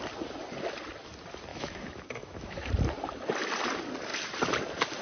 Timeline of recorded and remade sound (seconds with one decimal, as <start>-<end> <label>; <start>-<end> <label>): 0.0-1.5 recorded; 1.5-2.7 remade; 2.7-5.0 recorded